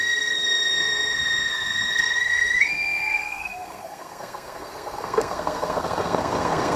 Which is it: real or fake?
fake